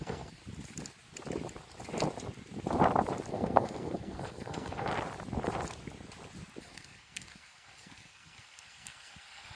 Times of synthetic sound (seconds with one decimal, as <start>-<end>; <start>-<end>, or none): 0.0-0.4; 3.3-4.9; 6.6-9.6